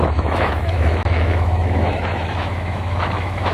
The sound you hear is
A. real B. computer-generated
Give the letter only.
B